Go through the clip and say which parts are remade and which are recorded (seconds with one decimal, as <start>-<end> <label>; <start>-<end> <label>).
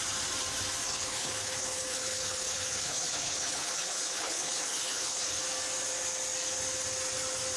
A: 0.0-0.8 recorded; 0.8-5.4 remade; 5.4-7.6 recorded